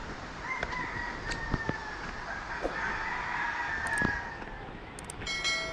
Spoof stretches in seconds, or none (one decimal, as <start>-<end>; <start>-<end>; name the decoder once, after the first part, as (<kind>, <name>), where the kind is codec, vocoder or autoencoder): 0.0-0.7 (vocoder, BigVGAN v2)